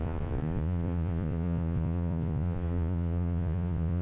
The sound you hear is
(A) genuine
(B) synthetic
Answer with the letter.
B